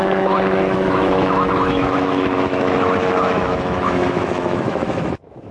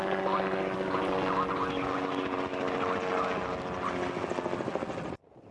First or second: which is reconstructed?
first